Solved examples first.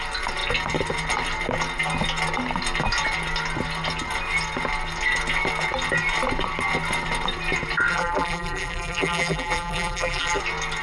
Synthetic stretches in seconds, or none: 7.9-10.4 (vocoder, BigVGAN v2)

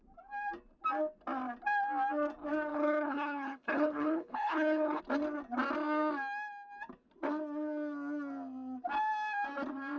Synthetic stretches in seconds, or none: 2.7-5.0 (codec, HILCodec)

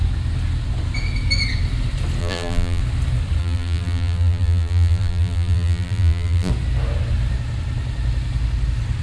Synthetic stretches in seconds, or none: 2.2-2.8 (vocoder, BigVGAN v2); 3.4-6.5

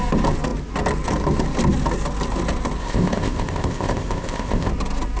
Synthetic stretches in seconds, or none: 2.8-4.7 (codec, ZipCodec)